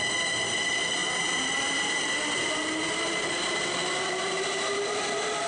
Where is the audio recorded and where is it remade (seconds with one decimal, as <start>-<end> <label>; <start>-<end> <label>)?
0.0-5.5 recorded